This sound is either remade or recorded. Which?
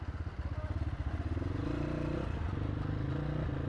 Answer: recorded